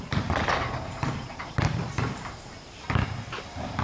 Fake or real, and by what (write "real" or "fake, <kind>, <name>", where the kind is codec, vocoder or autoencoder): fake, vocoder, BigVGAN v2